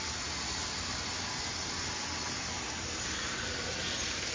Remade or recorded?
recorded